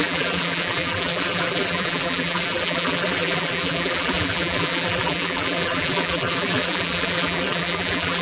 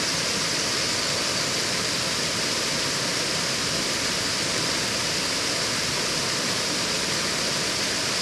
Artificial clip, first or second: first